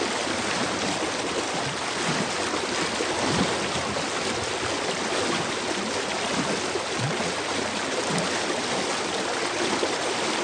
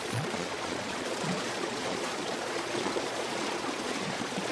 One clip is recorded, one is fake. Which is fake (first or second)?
second